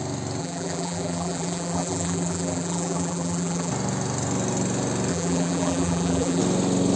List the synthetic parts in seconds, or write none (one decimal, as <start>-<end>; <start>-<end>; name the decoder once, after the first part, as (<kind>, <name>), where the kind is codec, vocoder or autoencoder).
0.4-3.7 (vocoder, BigVGAN v2); 5.1-6.4

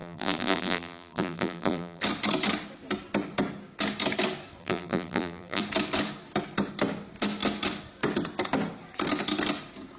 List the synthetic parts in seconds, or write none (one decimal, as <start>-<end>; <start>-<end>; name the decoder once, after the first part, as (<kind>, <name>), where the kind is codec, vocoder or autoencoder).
0.0-2.0 (vocoder, BigVGAN v2); 4.6-5.6

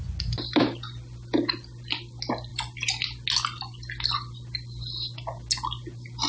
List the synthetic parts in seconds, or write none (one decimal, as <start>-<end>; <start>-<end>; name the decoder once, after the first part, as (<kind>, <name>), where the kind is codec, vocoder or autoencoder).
none

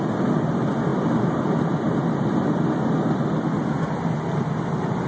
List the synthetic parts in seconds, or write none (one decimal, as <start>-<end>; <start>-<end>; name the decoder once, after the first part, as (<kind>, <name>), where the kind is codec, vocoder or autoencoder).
none

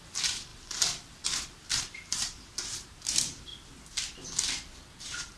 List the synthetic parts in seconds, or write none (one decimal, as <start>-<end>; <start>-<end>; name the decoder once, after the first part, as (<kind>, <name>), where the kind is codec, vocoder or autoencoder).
0.0-0.5 (vocoder, BigVGAN v2); 1.8-3.5; 5.0-5.4

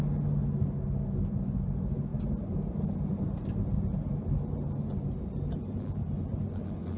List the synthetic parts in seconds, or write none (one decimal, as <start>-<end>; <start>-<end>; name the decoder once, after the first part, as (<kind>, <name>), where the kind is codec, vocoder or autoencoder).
none

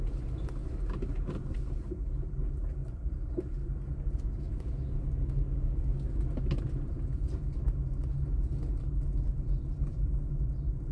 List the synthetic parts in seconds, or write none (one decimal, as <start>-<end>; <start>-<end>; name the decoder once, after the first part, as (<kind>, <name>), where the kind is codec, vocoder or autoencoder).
none

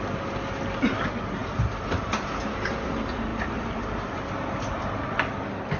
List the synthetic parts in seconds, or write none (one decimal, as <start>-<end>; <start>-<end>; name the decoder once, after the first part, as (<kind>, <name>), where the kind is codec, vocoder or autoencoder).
3.3-4.8 (vocoder, BigVGAN v2)